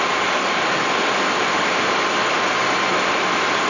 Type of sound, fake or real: real